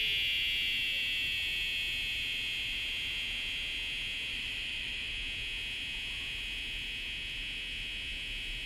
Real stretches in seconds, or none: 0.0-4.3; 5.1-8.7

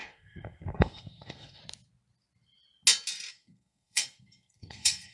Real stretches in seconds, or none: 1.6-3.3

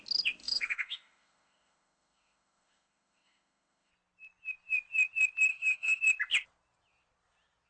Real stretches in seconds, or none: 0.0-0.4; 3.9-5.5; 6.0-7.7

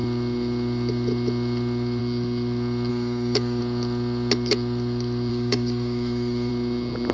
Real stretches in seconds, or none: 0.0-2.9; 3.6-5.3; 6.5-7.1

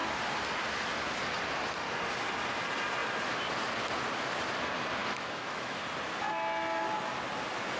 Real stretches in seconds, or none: 0.0-5.0; 5.8-7.8

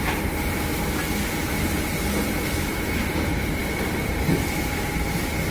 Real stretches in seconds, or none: 0.0-5.5

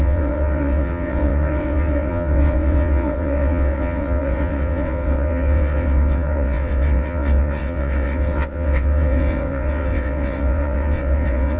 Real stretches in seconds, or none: none